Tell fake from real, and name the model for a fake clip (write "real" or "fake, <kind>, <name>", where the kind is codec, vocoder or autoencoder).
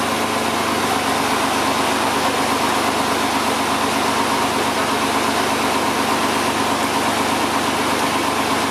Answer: real